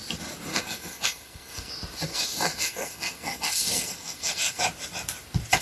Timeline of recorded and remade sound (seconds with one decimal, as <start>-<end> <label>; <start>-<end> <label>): 0.0-0.5 recorded; 0.5-1.7 remade; 1.7-2.1 recorded; 2.1-4.6 remade; 4.6-5.6 recorded

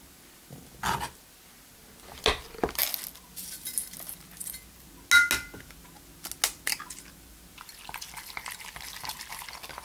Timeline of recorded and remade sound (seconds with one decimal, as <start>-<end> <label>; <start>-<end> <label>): 0.0-9.8 recorded

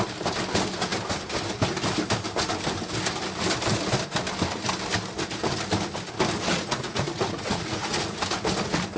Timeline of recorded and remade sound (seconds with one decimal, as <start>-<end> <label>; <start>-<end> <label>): 0.0-6.5 recorded; 6.5-8.2 remade; 8.2-9.0 recorded